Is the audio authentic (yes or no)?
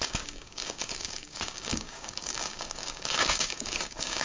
no